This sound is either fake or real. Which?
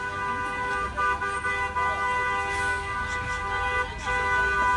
real